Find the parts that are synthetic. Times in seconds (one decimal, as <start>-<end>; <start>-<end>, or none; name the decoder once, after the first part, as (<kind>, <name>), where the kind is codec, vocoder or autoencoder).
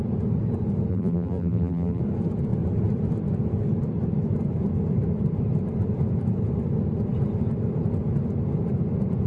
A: 0.9-2.0 (vocoder, BigVGAN v2)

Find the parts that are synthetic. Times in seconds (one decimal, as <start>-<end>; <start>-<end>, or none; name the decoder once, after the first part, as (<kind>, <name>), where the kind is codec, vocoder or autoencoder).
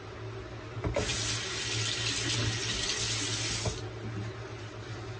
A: none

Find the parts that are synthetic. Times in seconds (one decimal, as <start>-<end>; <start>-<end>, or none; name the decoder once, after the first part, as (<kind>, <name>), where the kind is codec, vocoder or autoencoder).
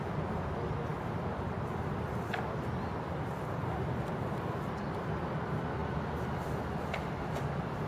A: none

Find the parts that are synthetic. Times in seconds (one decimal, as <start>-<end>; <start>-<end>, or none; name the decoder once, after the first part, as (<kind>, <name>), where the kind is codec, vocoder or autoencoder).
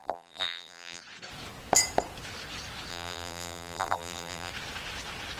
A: 0.0-1.0 (vocoder, BigVGAN v2); 2.9-4.5